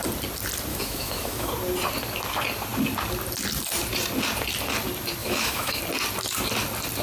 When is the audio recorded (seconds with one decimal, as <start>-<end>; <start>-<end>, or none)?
0.0-0.7; 1.5-5.2; 5.8-7.0